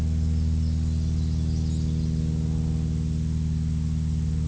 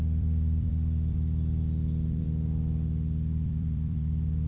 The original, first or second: first